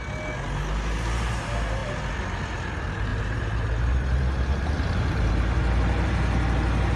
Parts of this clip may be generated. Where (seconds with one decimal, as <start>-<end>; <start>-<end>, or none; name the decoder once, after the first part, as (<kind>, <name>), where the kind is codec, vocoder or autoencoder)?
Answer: 3.1-5.3 (vocoder, BigVGAN v2)